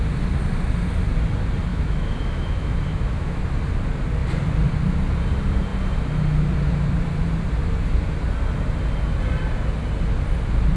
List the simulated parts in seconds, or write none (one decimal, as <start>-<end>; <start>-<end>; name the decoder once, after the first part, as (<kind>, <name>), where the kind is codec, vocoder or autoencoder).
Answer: 1.7-3.4 (autoencoder, DAC-VAE)